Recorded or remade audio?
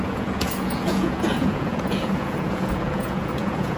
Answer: remade